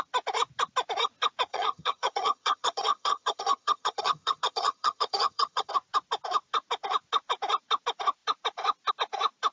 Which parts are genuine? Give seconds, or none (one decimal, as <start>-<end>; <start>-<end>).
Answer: 0.0-1.5; 5.7-9.5